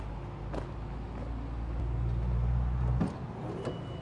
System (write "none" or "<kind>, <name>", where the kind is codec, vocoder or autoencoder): none